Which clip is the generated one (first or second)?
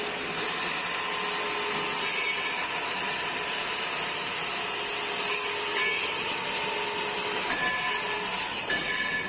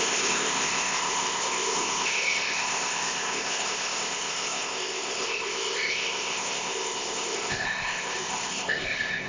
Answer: second